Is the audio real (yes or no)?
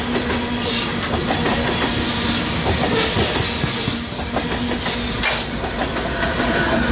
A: yes